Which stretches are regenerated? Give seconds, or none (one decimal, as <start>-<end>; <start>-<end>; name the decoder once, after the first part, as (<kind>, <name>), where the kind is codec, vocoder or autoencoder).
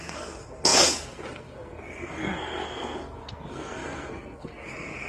0.0-5.1 (codec, SNAC)